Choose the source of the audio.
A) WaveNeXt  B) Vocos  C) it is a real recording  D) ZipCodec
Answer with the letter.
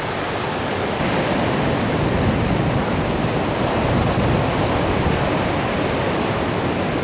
C